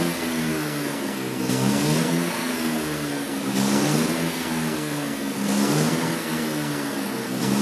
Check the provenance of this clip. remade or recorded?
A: remade